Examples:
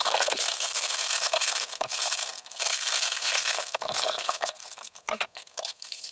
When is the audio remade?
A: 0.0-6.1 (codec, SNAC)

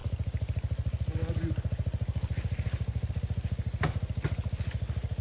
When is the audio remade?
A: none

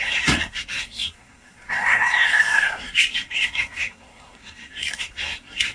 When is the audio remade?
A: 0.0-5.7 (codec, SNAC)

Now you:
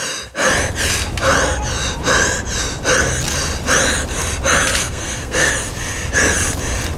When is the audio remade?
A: 4.8-5.5 (codec, SNAC)